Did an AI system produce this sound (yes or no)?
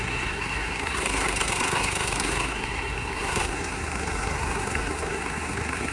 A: yes